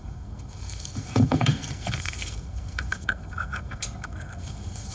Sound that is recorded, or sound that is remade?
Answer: remade